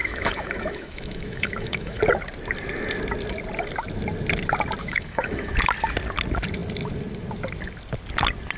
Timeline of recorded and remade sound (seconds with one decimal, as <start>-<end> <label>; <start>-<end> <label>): 0.0-2.0 remade; 2.0-4.8 recorded; 4.8-5.5 remade; 5.5-8.6 recorded